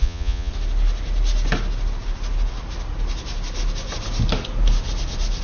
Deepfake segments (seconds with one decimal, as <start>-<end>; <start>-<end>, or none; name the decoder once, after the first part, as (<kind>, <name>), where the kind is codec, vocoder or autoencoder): 0.0-0.5 (vocoder, Vocos)